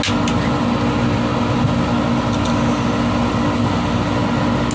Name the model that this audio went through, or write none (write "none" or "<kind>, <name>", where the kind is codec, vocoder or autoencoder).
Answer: none